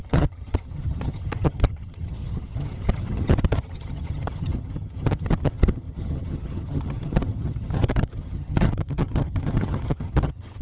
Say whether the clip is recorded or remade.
remade